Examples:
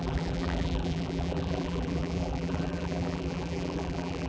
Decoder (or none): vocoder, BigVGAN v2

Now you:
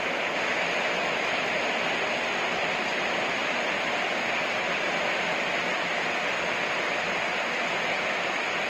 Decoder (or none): none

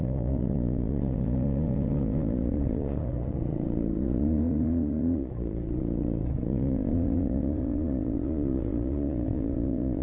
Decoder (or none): vocoder, Vocos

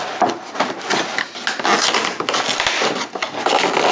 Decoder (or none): none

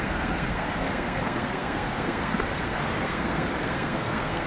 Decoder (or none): codec, SNAC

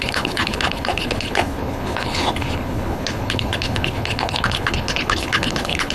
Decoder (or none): codec, HILCodec